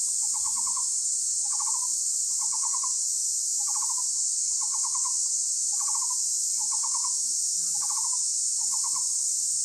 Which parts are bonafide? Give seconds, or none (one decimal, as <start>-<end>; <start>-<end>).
3.2-8.4